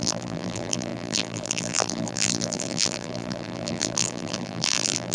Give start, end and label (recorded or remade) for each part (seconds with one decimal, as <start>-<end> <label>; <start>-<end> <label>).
0.0-5.1 remade